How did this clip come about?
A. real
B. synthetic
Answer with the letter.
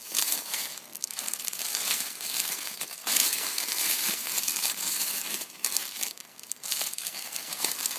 B